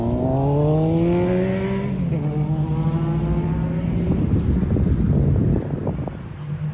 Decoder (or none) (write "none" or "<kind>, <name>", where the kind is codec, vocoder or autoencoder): none